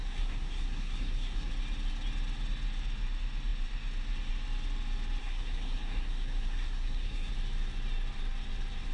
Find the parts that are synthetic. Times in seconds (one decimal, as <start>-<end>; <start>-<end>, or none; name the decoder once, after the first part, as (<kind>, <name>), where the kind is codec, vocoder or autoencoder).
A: 0.0-1.5 (codec, SNAC); 5.2-7.3